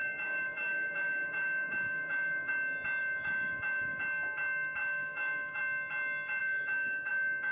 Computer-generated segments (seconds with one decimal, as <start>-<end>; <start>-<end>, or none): 0.0-2.5; 3.0-4.0; 4.8-5.6; 6.4-7.1